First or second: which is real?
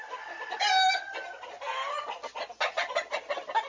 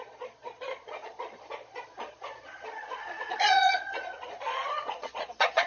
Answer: first